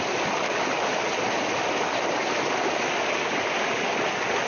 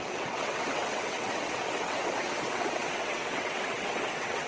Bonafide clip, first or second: first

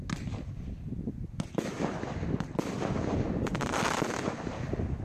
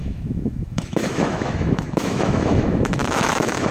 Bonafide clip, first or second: first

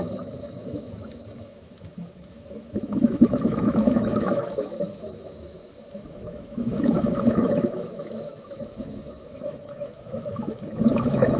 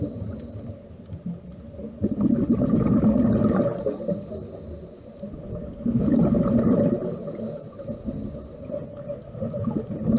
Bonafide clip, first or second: second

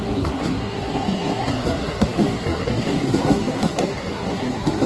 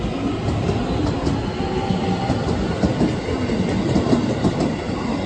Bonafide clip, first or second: second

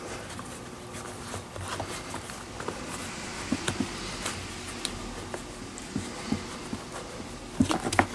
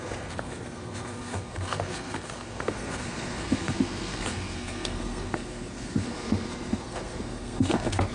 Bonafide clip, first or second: first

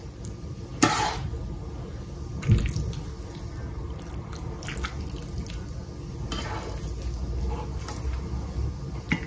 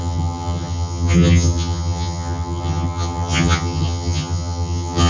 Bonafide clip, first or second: first